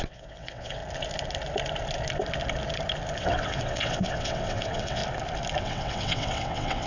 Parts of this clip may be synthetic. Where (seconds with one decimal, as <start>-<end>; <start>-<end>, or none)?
0.0-0.8; 3.2-5.0; 5.6-6.9

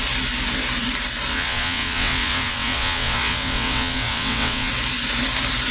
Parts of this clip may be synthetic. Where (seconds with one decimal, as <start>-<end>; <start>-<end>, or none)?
1.3-4.7

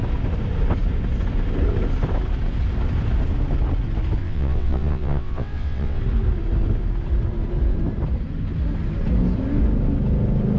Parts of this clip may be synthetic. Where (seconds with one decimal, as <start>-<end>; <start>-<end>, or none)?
4.2-6.0

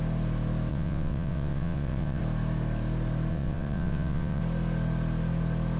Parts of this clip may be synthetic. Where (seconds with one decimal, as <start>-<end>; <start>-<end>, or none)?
0.7-2.2; 3.3-4.4

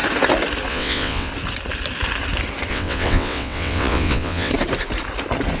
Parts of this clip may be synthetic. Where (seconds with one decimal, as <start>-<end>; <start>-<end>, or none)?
0.7-1.3; 2.7-4.5

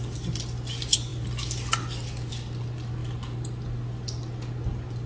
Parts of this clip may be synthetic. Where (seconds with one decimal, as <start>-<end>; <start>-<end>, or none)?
none